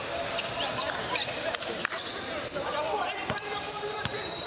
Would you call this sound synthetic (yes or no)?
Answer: no